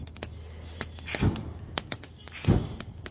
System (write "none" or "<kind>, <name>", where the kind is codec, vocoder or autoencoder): none